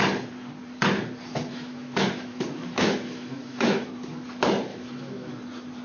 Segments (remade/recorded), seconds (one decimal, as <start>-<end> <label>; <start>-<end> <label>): 0.0-1.5 recorded; 1.5-3.9 remade; 3.9-4.7 recorded; 4.7-5.3 remade; 5.3-5.8 recorded